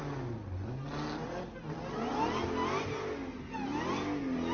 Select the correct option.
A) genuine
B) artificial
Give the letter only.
A